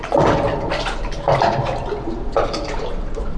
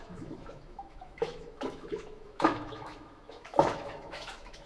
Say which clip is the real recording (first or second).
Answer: first